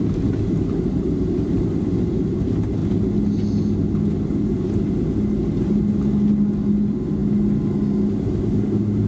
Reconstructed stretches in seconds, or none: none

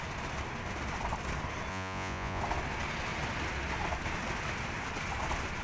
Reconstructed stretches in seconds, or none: 1.7-2.4 (vocoder, Vocos)

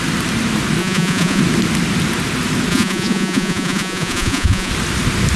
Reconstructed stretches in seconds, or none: 0.8-1.4 (vocoder, Vocos); 2.7-4.7

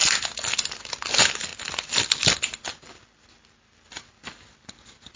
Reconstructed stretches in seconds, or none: none

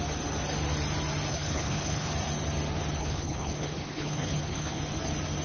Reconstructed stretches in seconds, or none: 1.3-2.1 (codec, HILCodec); 3.0-4.8

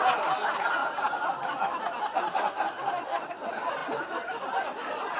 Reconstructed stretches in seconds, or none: none

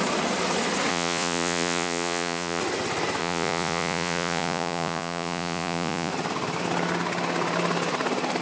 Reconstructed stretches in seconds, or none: 0.9-2.6 (vocoder, Vocos); 3.2-6.1